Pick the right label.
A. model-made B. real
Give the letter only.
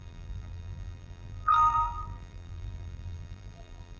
A